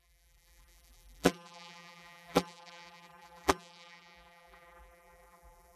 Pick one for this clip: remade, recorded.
remade